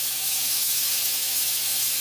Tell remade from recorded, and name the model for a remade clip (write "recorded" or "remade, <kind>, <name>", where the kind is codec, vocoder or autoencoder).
remade, autoencoder, DAC-VAE